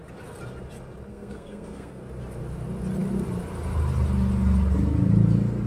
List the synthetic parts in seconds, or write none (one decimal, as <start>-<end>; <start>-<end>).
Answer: 1.1-2.0